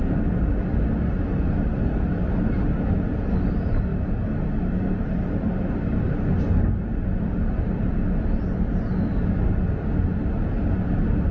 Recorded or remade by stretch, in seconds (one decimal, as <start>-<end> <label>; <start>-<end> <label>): 0.0-11.3 recorded